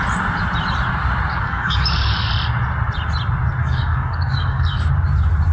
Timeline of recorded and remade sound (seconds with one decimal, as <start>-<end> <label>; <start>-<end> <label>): 0.0-1.3 recorded; 1.3-2.3 remade; 2.3-3.6 recorded; 3.6-4.9 remade; 4.9-5.5 recorded